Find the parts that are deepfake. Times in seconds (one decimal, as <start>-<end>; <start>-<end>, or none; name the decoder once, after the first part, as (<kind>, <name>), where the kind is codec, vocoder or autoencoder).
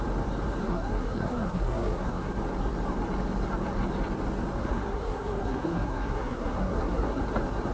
0.6-2.3 (codec, SNAC); 4.6-7.2